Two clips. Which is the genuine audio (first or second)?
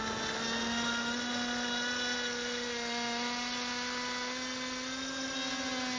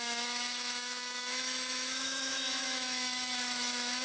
first